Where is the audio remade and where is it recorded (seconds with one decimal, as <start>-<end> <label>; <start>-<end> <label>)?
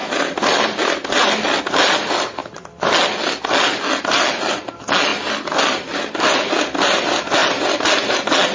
0.0-1.6 remade; 1.6-5.1 recorded; 5.1-7.0 remade; 7.0-8.5 recorded